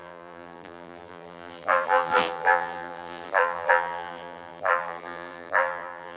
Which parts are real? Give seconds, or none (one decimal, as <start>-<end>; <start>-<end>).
none